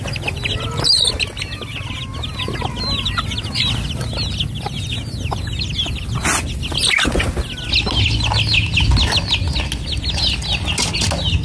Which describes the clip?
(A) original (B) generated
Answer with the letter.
A